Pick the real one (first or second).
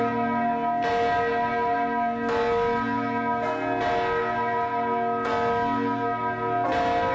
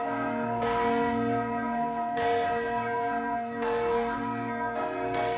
first